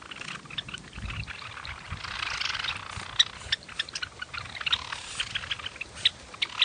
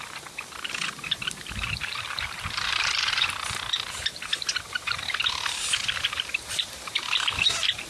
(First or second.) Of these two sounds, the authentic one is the first